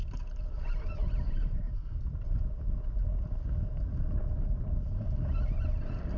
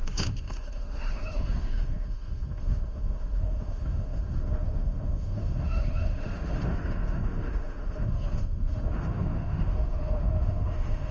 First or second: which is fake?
second